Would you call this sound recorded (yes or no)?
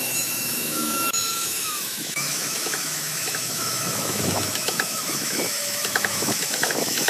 no